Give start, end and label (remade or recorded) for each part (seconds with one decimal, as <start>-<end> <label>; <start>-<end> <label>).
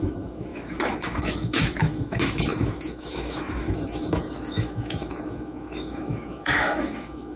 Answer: 0.0-7.4 remade